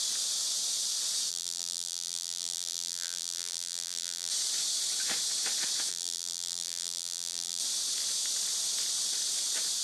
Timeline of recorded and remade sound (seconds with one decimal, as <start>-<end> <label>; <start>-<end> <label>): 0.0-1.3 recorded; 1.3-4.3 remade; 4.3-5.9 recorded; 5.9-7.6 remade; 7.6-9.8 recorded